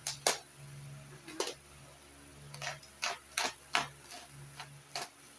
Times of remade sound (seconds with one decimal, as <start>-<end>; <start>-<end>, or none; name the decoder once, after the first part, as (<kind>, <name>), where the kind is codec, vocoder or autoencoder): none